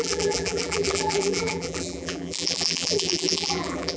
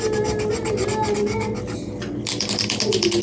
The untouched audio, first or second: second